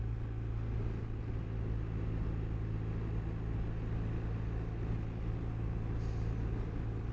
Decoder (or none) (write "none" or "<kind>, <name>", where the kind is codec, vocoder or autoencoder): none